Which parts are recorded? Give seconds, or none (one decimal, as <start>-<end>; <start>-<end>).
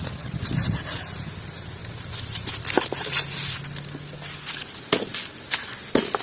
0.0-6.2